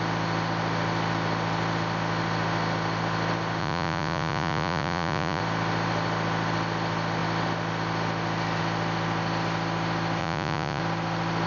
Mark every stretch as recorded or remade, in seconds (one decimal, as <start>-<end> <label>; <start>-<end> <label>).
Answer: 0.0-3.6 recorded; 3.6-5.4 remade; 5.4-10.2 recorded; 10.2-10.8 remade; 10.8-11.5 recorded